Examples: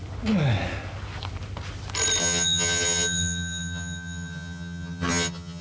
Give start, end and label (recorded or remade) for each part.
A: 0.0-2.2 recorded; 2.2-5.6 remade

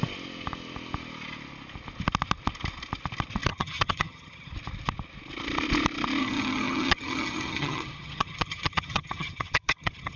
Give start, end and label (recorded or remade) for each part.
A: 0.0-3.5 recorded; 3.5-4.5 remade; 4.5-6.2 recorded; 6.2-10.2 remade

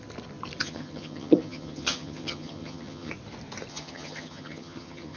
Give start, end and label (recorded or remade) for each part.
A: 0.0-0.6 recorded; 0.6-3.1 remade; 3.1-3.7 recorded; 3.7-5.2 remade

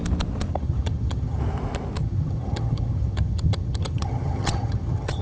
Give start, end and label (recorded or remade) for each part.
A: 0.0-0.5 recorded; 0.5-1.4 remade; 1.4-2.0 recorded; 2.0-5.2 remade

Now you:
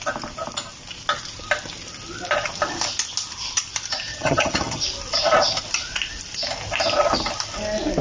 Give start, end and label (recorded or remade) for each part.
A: 0.0-4.1 recorded; 4.1-4.8 remade; 4.8-8.0 recorded